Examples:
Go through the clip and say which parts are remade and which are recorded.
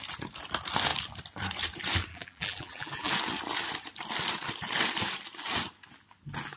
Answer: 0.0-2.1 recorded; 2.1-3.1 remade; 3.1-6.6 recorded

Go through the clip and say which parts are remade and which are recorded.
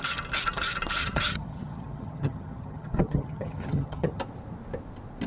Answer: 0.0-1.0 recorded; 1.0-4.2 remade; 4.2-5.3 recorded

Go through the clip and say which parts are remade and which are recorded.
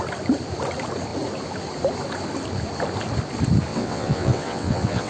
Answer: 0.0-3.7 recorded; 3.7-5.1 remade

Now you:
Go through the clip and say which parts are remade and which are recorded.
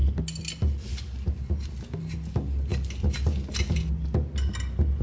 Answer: 0.0-5.0 recorded